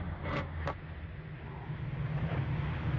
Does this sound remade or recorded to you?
recorded